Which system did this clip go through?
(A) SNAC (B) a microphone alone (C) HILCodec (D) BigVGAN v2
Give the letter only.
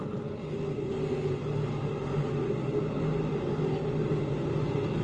B